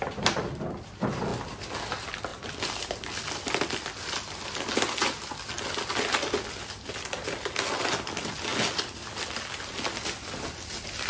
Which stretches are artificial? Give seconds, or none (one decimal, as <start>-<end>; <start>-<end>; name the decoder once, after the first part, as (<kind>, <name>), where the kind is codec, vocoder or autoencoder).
none